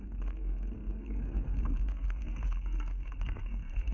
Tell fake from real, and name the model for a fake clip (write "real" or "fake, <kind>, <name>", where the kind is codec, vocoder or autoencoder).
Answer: fake, codec, SNAC